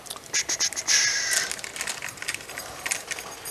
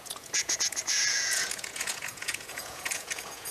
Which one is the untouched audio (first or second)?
first